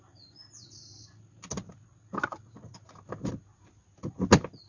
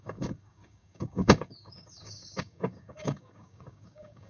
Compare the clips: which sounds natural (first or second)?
first